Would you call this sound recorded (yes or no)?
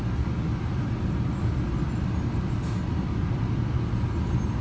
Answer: yes